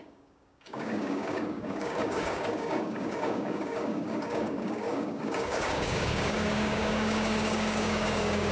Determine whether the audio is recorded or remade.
remade